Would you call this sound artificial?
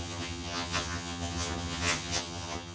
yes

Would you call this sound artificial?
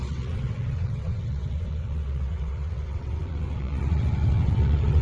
yes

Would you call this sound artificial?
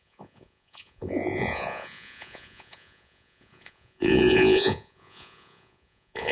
yes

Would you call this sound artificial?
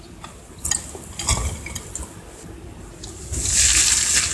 no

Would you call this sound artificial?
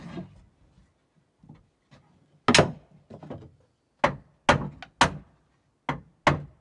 no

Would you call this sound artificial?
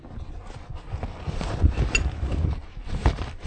no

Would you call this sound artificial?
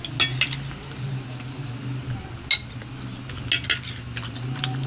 no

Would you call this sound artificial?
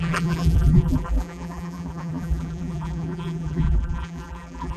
yes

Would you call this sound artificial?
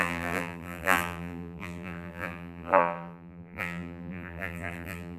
yes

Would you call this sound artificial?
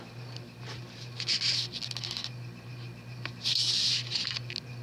no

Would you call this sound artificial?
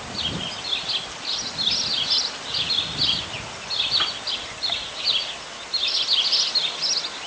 no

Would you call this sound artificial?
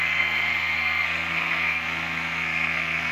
yes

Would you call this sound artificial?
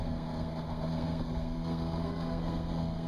yes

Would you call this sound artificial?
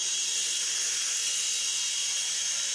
no